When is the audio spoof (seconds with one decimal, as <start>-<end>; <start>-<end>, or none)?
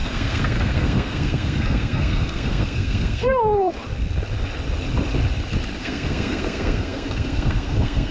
0.0-3.7; 5.8-8.1